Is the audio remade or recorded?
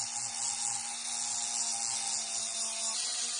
recorded